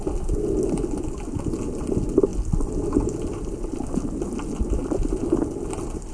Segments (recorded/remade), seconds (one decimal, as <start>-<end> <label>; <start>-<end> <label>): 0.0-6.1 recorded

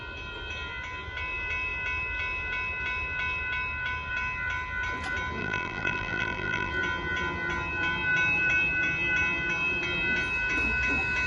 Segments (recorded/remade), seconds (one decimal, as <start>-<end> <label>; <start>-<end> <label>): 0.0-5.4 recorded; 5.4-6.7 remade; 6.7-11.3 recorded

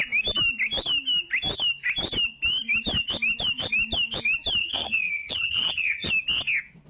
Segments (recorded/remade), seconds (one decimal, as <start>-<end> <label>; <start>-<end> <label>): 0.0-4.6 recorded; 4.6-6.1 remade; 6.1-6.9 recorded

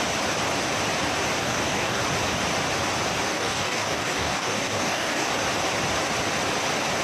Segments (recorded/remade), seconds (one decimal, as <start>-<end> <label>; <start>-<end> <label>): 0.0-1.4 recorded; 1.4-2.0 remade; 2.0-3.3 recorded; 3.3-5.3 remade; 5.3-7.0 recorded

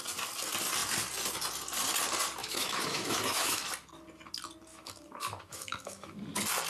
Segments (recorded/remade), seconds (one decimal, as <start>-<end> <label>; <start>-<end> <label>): 0.0-2.4 recorded; 2.4-3.6 remade; 3.6-4.7 recorded; 4.7-6.2 remade; 6.2-6.7 recorded

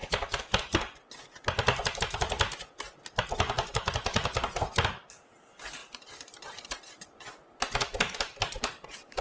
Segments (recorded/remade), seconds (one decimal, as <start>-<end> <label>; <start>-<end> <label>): 0.0-2.0 recorded; 2.0-5.8 remade; 5.8-6.4 recorded; 6.4-9.2 remade